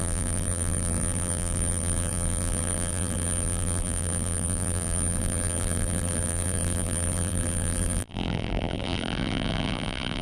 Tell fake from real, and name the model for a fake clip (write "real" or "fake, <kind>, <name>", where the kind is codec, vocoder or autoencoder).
fake, vocoder, BigVGAN v2